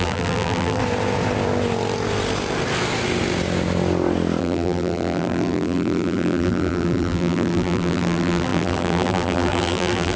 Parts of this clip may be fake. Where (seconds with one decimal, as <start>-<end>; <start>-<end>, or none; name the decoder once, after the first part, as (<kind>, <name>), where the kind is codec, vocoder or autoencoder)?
0.0-0.8 (vocoder, BigVGAN v2); 4.4-10.2